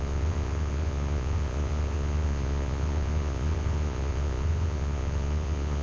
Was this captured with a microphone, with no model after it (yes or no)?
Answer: no